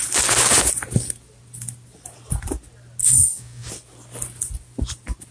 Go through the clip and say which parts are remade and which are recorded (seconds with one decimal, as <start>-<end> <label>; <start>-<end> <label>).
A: 0.0-3.0 recorded; 3.0-3.7 remade; 3.7-5.3 recorded